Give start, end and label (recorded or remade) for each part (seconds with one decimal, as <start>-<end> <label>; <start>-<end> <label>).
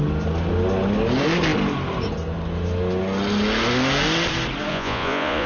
0.0-4.7 recorded; 4.7-5.5 remade